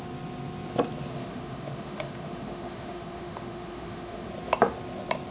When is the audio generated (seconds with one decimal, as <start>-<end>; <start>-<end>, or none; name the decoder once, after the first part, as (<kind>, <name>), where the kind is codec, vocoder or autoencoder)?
1.1-4.3 (autoencoder, DAC-VAE)